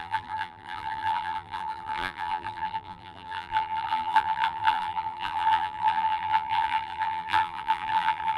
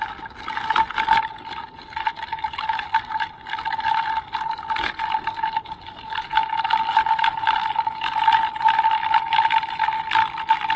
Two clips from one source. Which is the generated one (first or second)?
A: first